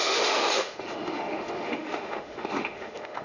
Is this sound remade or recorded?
remade